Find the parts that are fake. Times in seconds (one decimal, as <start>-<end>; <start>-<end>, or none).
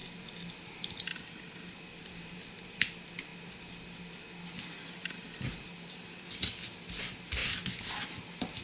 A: none